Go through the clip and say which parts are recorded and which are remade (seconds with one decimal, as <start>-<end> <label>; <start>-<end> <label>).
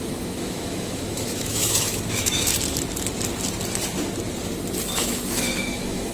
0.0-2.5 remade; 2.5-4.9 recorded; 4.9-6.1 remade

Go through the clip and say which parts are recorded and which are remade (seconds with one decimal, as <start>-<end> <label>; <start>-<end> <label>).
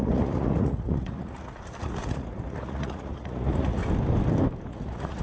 0.0-3.8 remade; 3.8-4.7 recorded; 4.7-5.2 remade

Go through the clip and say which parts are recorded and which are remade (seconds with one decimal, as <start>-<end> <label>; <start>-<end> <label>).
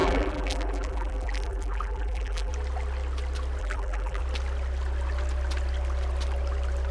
0.0-2.5 remade; 2.5-3.6 recorded; 3.6-4.2 remade; 4.2-6.9 recorded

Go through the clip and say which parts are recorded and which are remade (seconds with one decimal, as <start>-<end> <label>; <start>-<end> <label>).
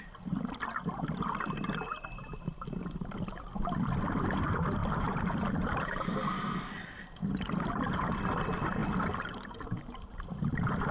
0.0-4.8 recorded; 4.8-6.1 remade; 6.1-10.9 recorded